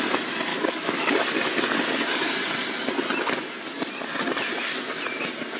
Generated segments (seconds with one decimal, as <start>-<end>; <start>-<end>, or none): 0.5-1.1